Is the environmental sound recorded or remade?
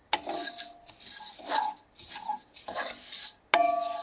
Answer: recorded